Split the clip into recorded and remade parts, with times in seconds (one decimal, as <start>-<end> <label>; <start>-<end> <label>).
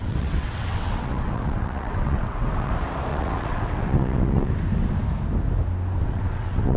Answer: 0.0-2.7 remade; 2.7-3.1 recorded; 3.1-4.5 remade; 4.5-6.0 recorded; 6.0-6.8 remade